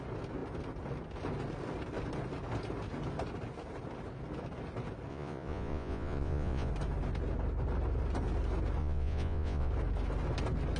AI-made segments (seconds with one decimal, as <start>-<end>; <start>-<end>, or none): 5.1-6.7; 8.8-9.7